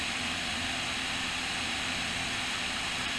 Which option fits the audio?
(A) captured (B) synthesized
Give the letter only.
B